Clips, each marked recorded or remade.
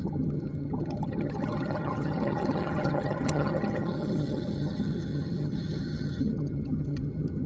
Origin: remade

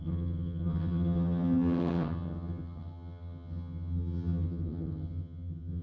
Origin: remade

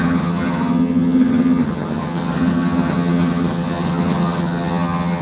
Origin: remade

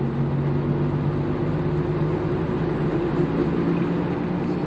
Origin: recorded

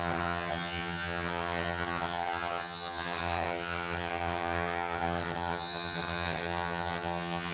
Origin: remade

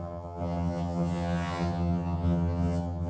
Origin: remade